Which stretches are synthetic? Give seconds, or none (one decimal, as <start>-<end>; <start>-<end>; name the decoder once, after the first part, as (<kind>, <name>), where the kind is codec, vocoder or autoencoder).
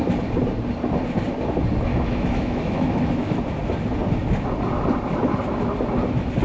1.9-3.4 (autoencoder, DAC-VAE)